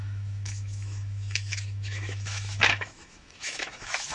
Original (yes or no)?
no